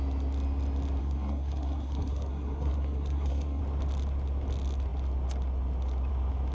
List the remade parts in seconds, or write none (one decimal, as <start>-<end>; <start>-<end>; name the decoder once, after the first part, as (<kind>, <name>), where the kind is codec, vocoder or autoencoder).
1.0-3.6 (codec, SNAC)